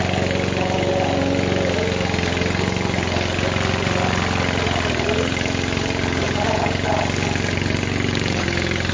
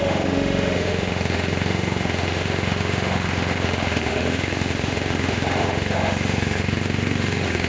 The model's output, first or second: second